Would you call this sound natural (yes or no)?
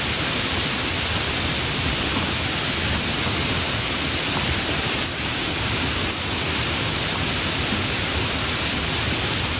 yes